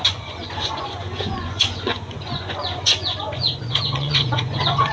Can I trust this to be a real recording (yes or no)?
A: no